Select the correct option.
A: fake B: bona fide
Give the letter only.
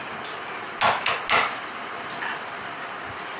B